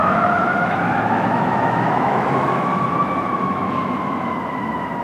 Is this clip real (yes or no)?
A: no